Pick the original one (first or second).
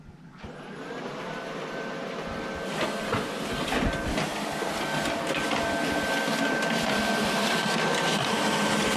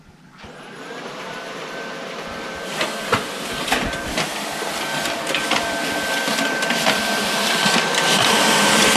first